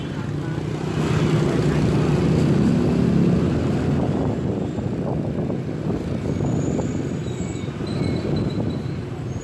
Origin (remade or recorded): recorded